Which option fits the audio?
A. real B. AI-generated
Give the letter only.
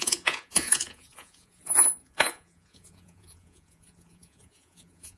B